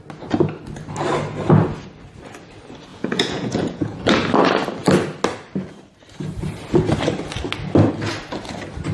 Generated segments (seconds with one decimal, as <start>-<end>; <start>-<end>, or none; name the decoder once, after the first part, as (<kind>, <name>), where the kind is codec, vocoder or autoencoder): 2.9-4.0 (vocoder, Vocos)

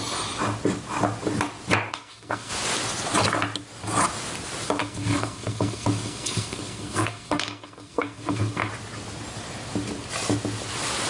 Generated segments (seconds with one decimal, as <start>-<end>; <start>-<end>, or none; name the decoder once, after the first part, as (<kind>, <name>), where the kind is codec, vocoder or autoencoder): 1.9-2.5 (codec, SNAC); 4.8-8.7